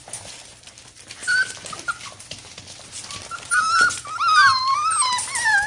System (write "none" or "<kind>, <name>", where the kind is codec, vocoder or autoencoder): none